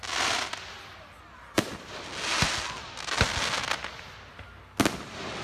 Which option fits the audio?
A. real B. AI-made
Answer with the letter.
A